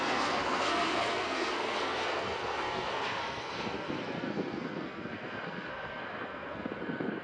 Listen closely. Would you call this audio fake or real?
fake